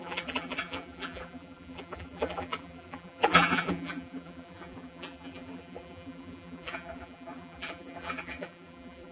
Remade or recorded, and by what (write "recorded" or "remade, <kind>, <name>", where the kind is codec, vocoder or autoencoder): remade, vocoder, BigVGAN v2